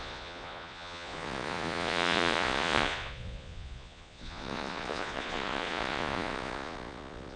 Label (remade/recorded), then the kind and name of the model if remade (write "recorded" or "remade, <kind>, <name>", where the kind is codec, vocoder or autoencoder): remade, vocoder, Vocos